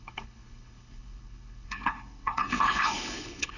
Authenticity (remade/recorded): remade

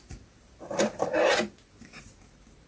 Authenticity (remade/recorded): remade